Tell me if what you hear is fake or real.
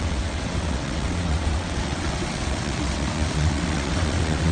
fake